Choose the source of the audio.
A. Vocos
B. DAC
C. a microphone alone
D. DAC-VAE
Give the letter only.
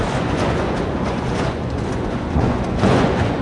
A